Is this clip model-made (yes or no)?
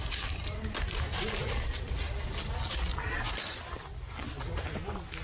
no